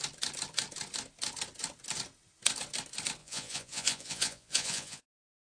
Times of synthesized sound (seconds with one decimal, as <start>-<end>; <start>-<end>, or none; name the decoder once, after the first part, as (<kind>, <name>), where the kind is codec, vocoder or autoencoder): 3.2-5.4 (vocoder, Vocos)